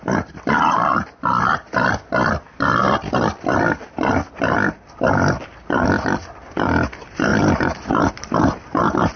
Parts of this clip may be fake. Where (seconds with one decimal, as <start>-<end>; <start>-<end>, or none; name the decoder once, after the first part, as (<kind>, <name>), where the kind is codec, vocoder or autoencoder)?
0.0-2.8 (vocoder, BigVGAN v2); 4.7-7.3; 7.9-9.2